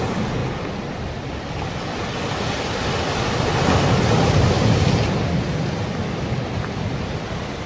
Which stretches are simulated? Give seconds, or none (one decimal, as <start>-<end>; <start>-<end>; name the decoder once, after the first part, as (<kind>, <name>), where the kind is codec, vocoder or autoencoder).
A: 0.4-3.1 (vocoder, BigVGAN v2)